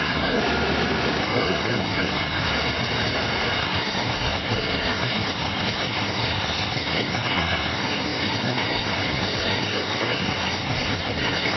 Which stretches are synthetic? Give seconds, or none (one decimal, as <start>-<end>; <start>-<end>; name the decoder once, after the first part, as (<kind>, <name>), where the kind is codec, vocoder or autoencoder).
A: 0.0-0.4 (codec, SNAC); 1.2-2.5; 3.6-11.6